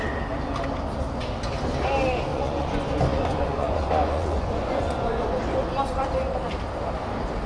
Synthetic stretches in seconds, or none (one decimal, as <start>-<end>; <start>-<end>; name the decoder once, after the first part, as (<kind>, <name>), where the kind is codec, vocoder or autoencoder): 2.3-5.4 (vocoder, Vocos)